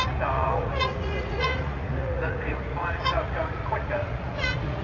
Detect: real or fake fake